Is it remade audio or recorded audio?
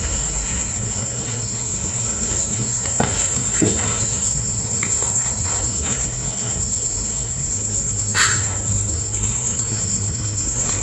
remade